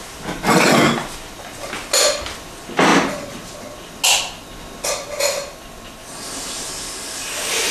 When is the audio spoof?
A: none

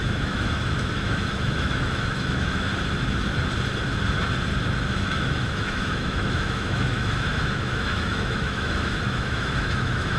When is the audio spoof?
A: 0.0-2.7 (autoencoder, DAC-VAE); 4.9-10.2